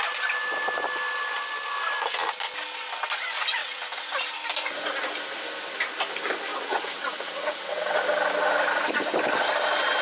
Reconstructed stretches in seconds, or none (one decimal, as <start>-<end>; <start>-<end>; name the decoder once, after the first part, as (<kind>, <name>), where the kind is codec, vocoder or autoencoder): 3.6-4.1 (vocoder, WaveNeXt); 6.5-8.0